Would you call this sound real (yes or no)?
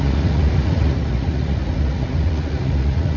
no